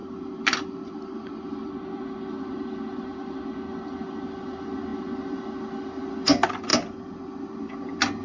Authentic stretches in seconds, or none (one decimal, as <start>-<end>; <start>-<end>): 0.0-8.2